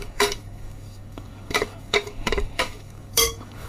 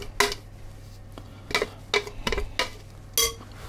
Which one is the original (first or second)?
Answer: second